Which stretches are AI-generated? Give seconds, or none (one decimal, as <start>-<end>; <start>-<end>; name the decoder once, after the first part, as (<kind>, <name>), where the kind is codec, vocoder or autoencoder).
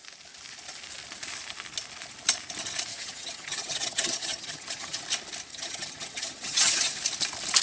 2.9-5.0 (vocoder, HiFi-GAN); 5.5-7.0